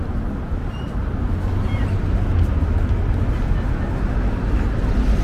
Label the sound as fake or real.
real